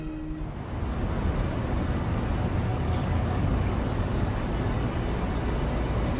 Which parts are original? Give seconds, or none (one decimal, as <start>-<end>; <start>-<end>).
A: 0.0-2.7; 5.0-6.2